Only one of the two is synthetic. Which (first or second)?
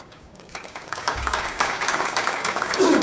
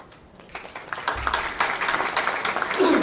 first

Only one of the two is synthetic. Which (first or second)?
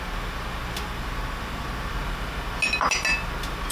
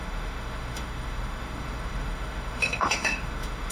second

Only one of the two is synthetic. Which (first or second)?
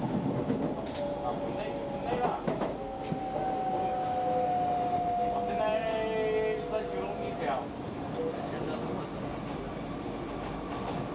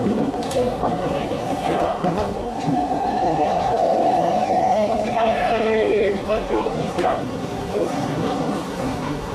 second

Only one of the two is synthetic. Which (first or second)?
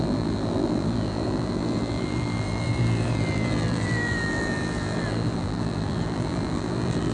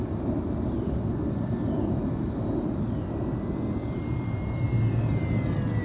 first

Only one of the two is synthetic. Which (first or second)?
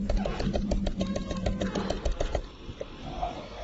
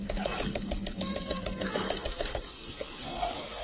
second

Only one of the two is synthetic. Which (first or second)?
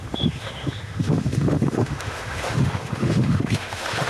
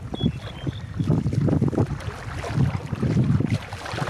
first